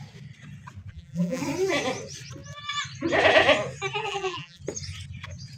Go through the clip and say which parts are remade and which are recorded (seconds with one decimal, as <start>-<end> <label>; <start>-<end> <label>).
0.0-0.9 recorded; 0.9-1.4 remade; 1.4-4.0 recorded; 4.0-4.6 remade; 4.6-5.6 recorded